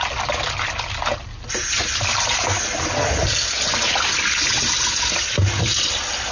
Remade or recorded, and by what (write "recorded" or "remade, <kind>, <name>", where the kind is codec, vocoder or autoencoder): recorded